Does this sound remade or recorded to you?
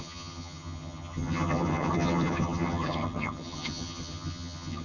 remade